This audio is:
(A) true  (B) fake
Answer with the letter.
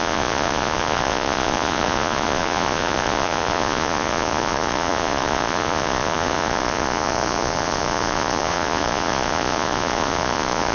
B